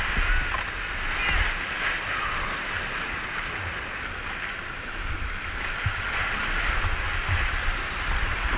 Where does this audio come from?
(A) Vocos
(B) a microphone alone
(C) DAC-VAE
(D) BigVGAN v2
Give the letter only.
B